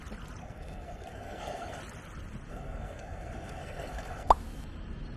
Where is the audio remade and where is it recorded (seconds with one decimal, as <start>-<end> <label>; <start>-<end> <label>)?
0.0-0.4 recorded; 0.4-1.8 remade; 1.8-2.5 recorded; 2.5-4.3 remade; 4.3-5.2 recorded